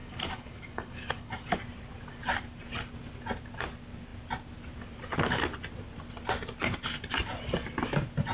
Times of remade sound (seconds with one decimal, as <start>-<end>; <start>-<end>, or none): 0.0-1.5